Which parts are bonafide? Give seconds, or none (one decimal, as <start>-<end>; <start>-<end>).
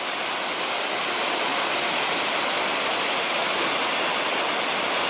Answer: 0.0-5.1